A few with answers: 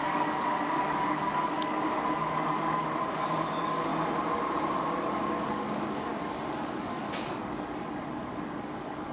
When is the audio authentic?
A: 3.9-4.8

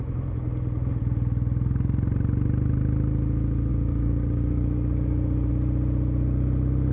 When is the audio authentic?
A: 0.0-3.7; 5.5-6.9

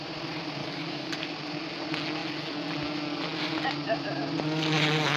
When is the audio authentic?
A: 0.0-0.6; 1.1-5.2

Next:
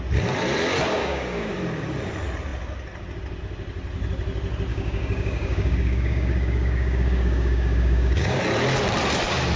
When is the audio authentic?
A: 0.0-1.0; 1.5-4.7; 8.4-9.6